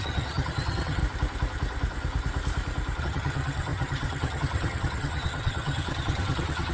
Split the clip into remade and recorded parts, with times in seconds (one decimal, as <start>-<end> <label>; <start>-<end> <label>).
0.0-1.0 remade; 1.0-3.0 recorded; 3.0-6.7 remade